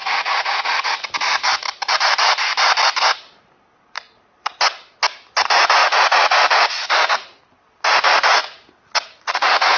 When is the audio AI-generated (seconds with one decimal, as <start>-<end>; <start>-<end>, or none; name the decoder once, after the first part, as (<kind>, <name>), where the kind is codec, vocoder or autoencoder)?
0.0-1.1 (vocoder, Vocos); 5.8-7.4; 8.4-9.8